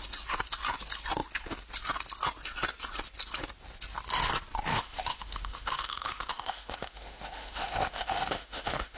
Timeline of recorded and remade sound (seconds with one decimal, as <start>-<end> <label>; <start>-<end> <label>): 0.0-4.7 recorded; 4.7-9.0 remade